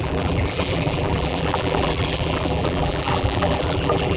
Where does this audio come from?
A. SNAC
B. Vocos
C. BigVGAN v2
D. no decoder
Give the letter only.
C